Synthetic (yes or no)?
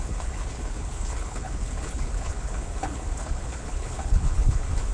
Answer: yes